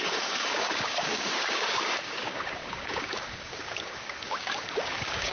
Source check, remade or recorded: remade